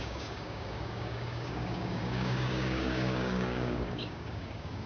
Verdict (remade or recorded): remade